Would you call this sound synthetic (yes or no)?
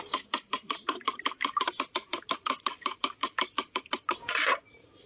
yes